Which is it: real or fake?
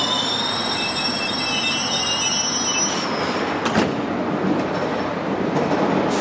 real